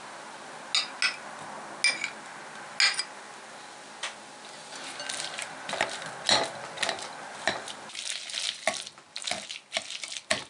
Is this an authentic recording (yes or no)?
yes